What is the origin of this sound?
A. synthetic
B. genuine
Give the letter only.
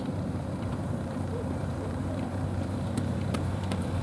A